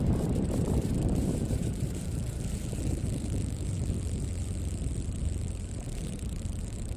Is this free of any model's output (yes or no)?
no